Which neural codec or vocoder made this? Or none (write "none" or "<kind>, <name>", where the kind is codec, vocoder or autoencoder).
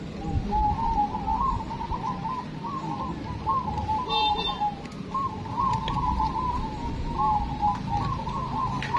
none